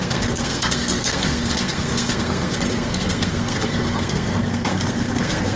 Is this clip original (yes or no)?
no